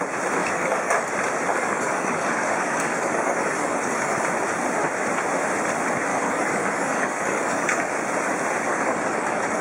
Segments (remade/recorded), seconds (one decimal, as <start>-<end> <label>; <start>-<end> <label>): 0.0-0.4 recorded; 0.4-1.1 remade; 1.1-1.5 recorded; 1.5-4.2 remade; 4.2-6.1 recorded; 6.1-8.0 remade; 8.0-8.7 recorded; 8.7-9.6 remade